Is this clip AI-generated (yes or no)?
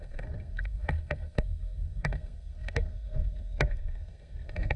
yes